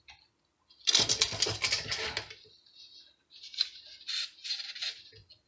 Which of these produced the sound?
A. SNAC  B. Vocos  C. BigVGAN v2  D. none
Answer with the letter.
D